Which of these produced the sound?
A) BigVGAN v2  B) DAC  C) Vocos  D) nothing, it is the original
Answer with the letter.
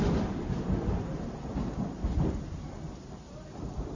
A